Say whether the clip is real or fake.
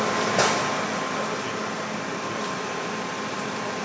real